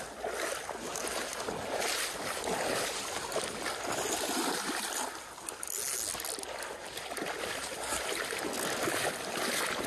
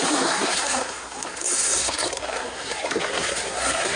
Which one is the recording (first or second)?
first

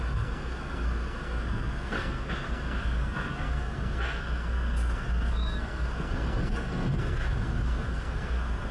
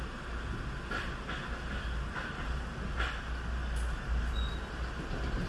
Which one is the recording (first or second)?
second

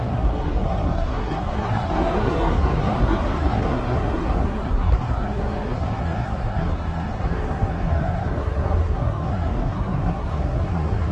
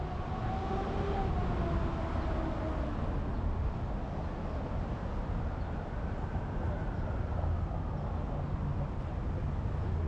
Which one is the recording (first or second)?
second